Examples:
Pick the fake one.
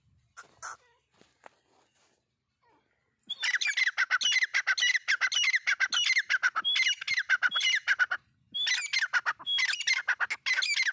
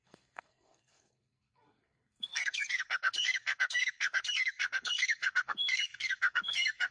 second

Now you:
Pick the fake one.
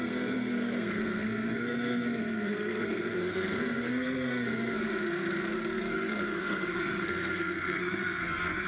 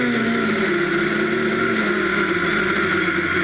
first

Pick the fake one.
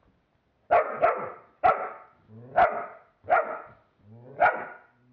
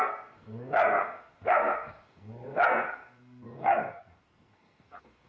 second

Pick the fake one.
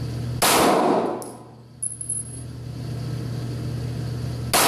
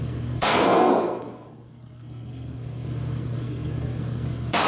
second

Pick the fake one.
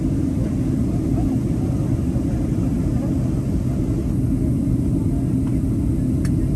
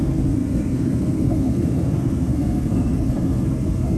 second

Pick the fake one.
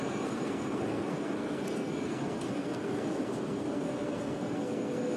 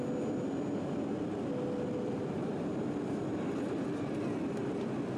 first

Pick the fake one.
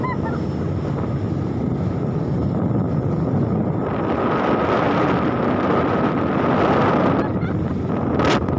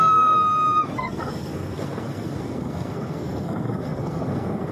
second